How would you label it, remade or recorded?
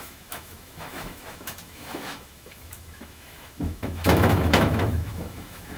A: remade